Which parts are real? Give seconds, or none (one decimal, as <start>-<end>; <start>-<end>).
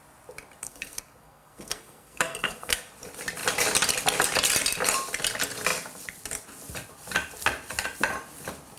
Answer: 0.0-0.6; 2.9-8.8